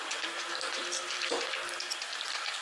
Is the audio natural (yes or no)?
yes